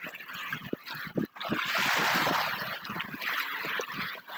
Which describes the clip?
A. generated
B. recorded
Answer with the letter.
B